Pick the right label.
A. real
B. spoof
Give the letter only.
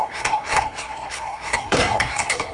B